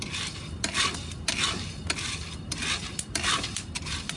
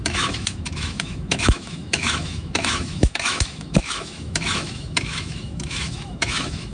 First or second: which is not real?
second